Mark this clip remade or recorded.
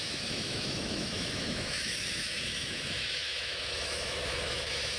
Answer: remade